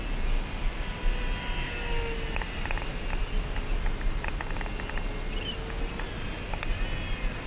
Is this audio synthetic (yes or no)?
no